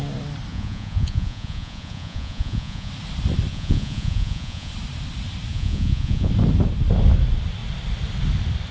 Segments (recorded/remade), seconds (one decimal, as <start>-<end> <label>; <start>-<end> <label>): 0.0-0.5 recorded; 0.5-2.9 remade; 2.9-3.5 recorded; 3.5-4.7 remade; 4.7-5.5 recorded; 5.5-6.3 remade; 6.3-8.7 recorded